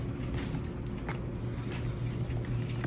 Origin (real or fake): real